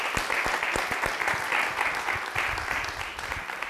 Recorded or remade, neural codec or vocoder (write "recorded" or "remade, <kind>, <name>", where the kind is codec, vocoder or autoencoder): recorded